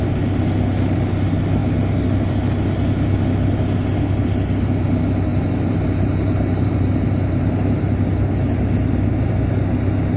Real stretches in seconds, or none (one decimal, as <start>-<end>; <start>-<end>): 0.0-5.3; 8.0-10.2